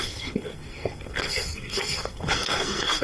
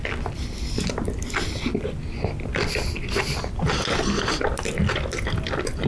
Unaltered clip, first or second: second